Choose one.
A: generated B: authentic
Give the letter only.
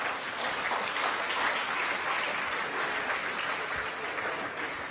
B